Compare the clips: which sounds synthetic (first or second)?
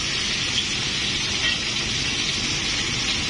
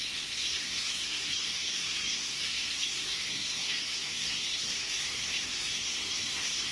second